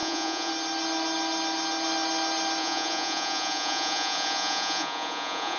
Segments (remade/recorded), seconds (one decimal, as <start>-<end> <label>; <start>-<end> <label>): 0.0-0.5 remade; 0.5-2.6 recorded; 2.6-5.6 remade